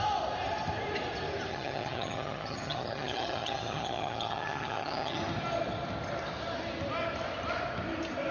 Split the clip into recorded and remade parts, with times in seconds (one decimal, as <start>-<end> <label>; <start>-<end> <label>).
0.0-1.5 recorded; 1.5-5.2 remade; 5.2-8.3 recorded